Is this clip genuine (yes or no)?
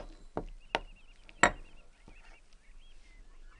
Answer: yes